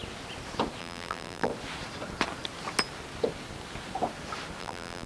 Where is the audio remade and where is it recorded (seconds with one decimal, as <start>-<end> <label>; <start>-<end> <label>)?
0.0-0.8 recorded; 0.8-1.5 remade; 1.5-4.6 recorded; 4.6-5.1 remade